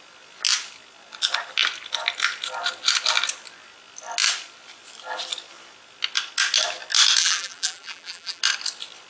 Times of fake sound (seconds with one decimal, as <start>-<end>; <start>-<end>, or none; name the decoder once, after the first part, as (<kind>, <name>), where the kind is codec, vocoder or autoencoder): 7.2-8.4 (vocoder, BigVGAN v2)